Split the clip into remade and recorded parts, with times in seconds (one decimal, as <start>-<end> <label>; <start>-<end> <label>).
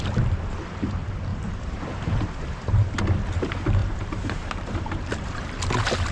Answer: 0.0-1.3 recorded; 1.3-3.0 remade; 3.0-3.8 recorded; 3.8-5.6 remade; 5.6-6.1 recorded